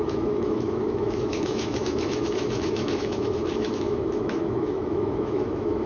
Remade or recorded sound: remade